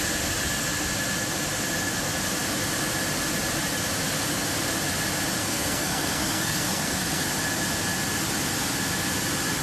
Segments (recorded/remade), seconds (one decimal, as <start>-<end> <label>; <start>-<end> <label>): 0.0-5.4 recorded; 5.4-7.3 remade; 7.3-9.6 recorded